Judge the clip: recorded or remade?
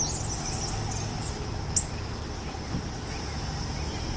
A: recorded